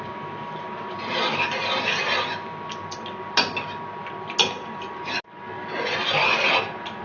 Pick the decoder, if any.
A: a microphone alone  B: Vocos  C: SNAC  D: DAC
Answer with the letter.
A